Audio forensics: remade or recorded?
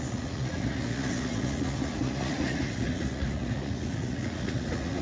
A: remade